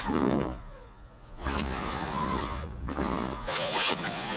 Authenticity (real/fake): fake